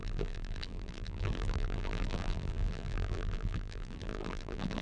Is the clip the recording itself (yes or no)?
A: no